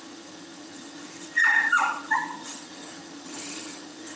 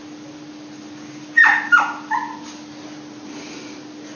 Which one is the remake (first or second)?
first